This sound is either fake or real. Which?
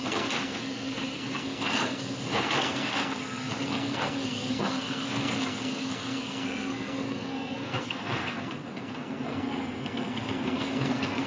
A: fake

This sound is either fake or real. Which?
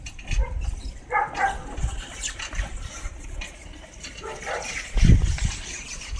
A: real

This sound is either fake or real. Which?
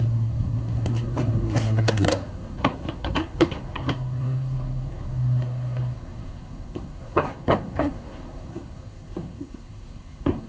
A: fake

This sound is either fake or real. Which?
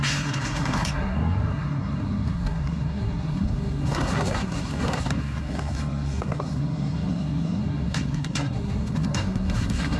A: fake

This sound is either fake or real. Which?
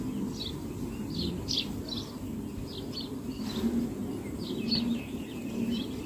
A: real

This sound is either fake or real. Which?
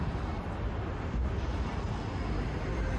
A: real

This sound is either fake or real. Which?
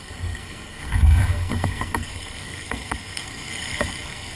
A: fake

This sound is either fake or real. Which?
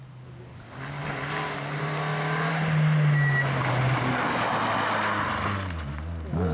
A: real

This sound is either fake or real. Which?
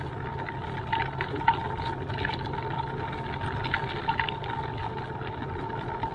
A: real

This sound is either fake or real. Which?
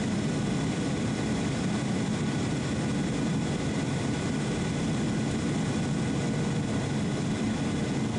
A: real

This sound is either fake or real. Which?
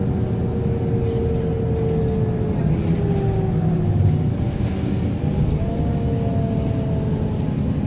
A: real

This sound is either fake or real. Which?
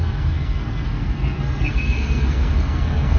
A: fake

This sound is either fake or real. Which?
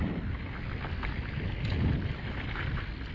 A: real